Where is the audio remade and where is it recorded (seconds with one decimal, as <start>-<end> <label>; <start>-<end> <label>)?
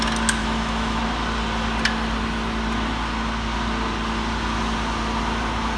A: 0.0-0.4 recorded; 0.4-1.0 remade; 1.0-5.8 recorded